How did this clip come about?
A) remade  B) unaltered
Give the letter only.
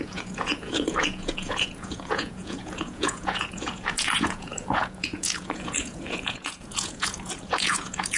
A